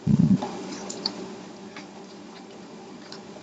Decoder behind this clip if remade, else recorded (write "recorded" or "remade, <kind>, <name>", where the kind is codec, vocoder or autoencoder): remade, vocoder, Vocos